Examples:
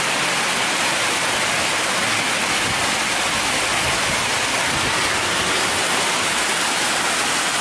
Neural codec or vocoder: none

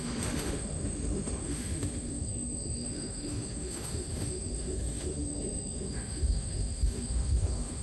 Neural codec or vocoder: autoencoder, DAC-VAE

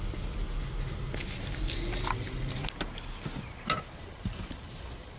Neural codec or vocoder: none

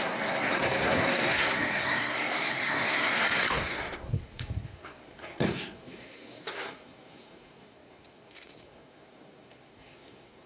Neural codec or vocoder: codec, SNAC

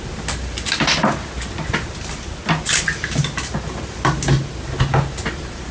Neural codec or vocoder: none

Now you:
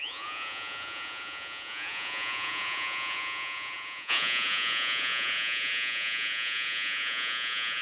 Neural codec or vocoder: vocoder, Vocos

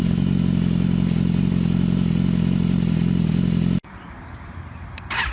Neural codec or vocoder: none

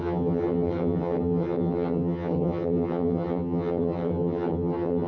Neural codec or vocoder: vocoder, HiFi-GAN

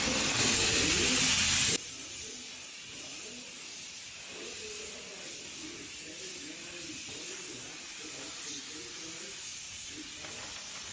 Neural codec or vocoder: none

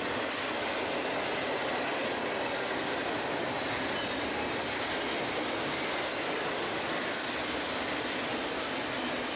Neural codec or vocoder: none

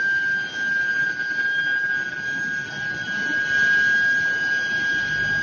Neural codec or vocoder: none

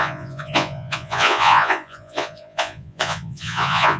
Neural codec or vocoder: vocoder, Vocos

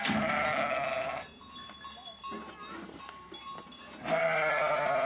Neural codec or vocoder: none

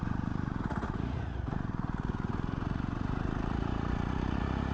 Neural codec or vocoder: vocoder, Vocos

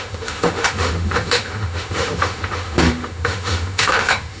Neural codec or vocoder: autoencoder, DAC-VAE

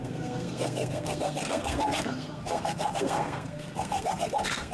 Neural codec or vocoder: codec, SNAC